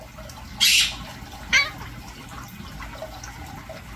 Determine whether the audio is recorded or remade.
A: recorded